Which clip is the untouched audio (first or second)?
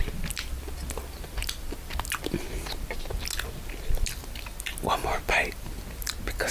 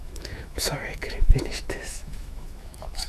first